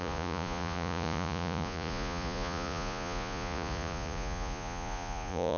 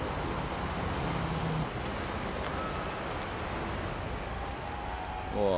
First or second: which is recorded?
second